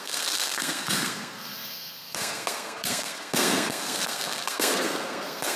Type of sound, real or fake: fake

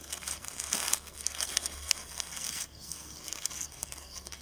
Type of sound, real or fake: fake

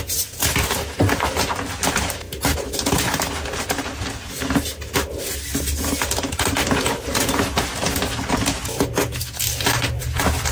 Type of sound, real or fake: real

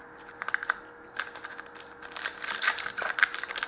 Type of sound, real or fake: real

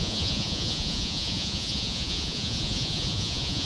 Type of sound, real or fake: fake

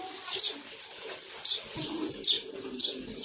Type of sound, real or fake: real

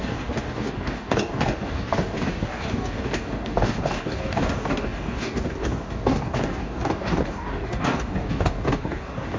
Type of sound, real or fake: fake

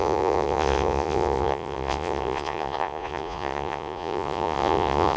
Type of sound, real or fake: fake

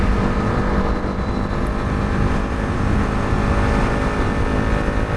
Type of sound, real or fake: real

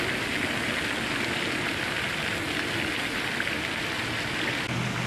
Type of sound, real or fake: real